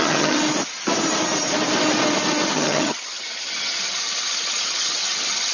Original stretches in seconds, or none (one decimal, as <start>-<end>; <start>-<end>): 0.4-2.5